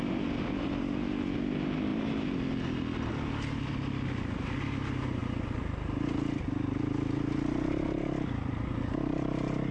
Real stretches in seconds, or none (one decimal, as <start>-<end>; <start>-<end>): 0.0-9.7